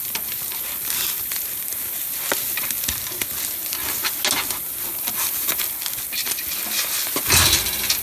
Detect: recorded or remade recorded